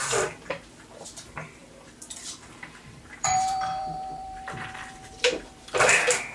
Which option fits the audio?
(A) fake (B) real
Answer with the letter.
A